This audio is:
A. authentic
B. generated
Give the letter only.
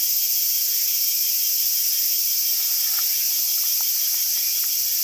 A